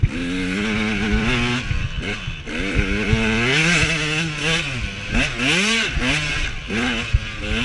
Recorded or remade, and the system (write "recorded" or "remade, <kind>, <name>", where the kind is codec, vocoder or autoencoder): recorded